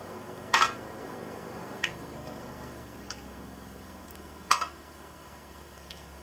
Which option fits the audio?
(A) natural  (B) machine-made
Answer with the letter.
B